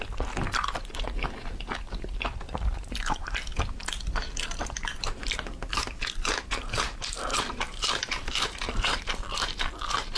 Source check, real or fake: fake